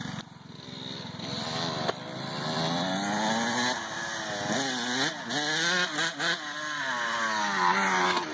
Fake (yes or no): no